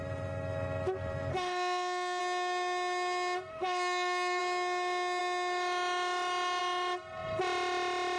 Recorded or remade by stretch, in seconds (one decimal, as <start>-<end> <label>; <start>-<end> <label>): 0.0-1.3 recorded; 1.3-2.2 remade; 2.2-3.5 recorded; 3.5-4.4 remade; 4.4-8.2 recorded